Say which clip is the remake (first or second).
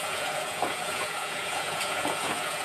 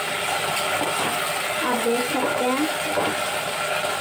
first